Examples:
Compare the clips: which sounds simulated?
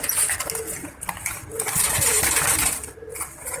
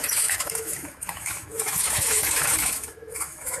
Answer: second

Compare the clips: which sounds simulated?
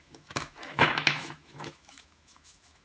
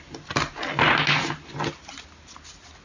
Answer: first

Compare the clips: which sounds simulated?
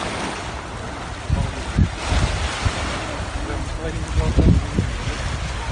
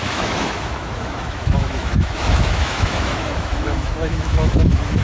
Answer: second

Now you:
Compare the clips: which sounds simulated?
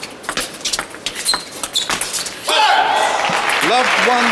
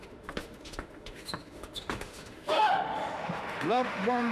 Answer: second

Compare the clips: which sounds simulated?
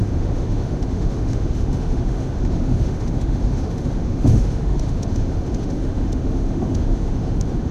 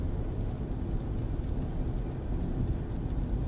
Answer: first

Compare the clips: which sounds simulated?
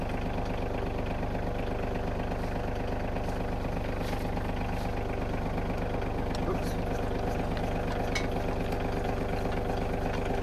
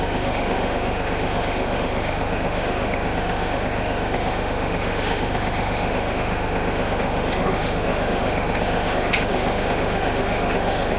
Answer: second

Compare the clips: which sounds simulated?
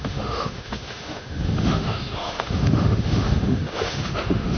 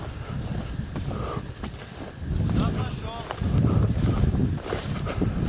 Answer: first